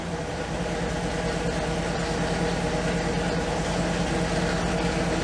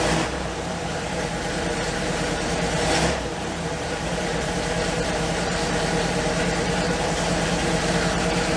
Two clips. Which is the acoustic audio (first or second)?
first